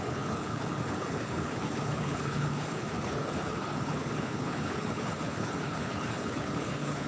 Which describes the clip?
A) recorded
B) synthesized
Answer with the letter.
B